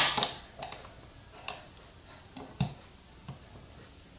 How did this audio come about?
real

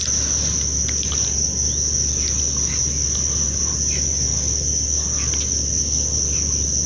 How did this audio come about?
real